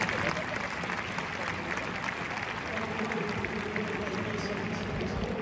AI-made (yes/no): no